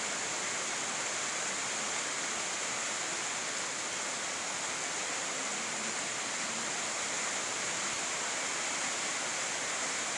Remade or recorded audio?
remade